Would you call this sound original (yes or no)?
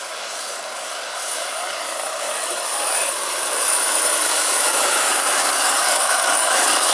no